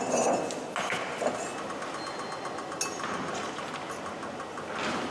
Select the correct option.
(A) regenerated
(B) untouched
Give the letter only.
B